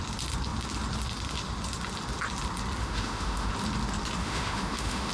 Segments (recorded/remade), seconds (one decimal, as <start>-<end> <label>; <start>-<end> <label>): 0.0-2.8 recorded; 2.8-3.5 remade; 3.5-4.2 recorded; 4.2-5.1 remade